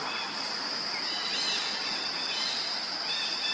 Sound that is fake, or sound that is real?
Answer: real